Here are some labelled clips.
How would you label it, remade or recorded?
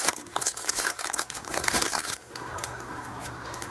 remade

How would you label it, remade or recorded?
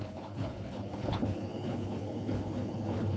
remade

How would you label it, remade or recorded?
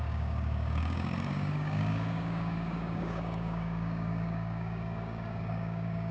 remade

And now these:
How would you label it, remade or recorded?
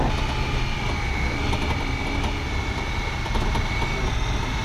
recorded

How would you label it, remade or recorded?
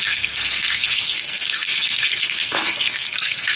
remade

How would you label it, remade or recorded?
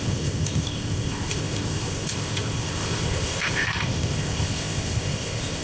remade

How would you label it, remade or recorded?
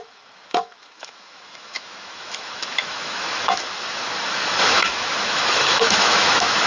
remade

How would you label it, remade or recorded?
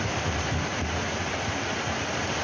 recorded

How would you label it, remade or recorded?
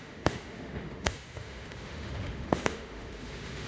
remade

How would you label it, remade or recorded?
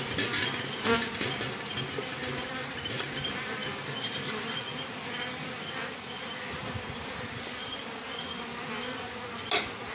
recorded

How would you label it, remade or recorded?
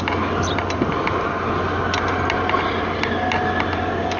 recorded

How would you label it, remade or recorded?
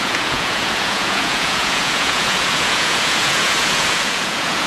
remade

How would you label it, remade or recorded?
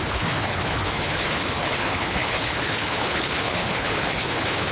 remade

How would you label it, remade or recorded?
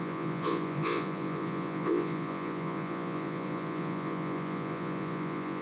remade